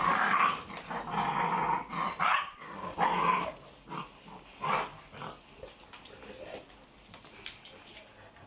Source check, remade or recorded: recorded